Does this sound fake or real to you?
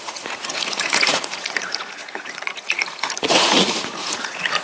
fake